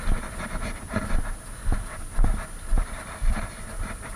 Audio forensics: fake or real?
real